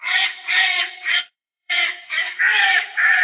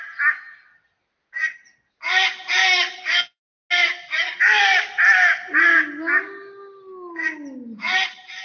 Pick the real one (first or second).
second